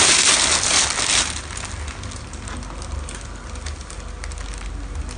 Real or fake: real